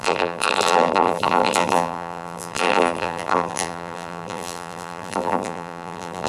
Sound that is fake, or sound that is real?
fake